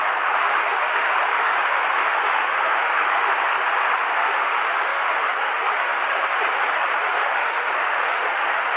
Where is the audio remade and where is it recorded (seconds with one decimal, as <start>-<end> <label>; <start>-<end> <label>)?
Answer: 0.0-3.4 remade; 3.4-4.1 recorded; 4.1-8.8 remade